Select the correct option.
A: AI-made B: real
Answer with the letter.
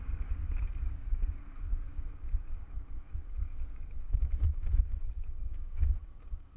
A